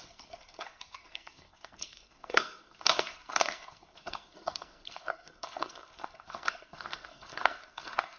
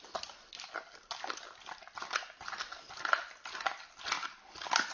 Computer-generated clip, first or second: first